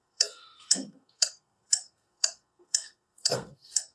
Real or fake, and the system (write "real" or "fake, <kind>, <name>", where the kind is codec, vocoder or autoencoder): fake, codec, SNAC